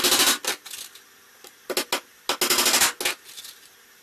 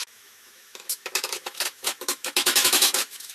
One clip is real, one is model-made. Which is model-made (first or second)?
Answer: second